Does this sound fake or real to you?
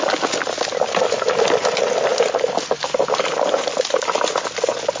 real